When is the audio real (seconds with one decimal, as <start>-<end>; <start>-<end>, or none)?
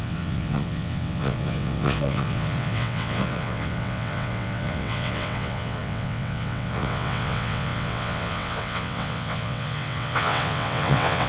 none